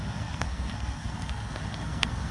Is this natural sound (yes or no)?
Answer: no